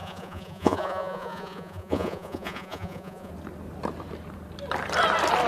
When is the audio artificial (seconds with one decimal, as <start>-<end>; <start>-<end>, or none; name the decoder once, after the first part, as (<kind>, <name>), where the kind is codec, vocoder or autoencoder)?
0.0-3.3 (vocoder, Vocos)